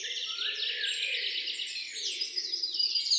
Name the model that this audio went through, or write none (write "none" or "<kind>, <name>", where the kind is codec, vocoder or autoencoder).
none